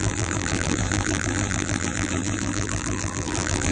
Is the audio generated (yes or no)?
yes